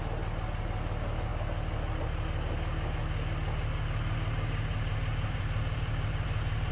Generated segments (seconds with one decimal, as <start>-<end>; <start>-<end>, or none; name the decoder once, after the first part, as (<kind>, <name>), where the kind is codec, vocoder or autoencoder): 4.7-6.7 (vocoder, BigVGAN v2)